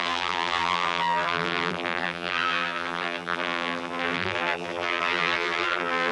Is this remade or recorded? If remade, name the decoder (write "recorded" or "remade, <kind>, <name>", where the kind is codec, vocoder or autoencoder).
remade, vocoder, BigVGAN v2